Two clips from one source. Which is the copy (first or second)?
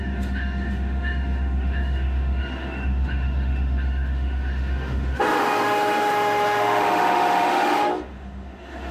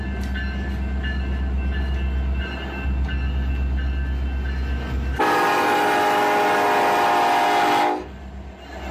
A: first